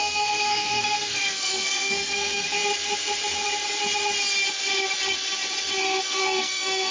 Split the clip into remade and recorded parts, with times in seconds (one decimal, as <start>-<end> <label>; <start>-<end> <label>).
0.0-2.6 remade; 2.6-6.0 recorded; 6.0-6.9 remade